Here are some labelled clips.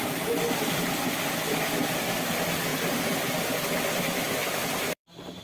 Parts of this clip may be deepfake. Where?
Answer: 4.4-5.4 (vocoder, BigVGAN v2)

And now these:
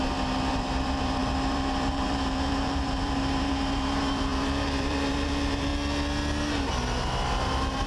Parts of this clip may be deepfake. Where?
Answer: 0.0-5.7 (vocoder, BigVGAN v2); 7.4-7.9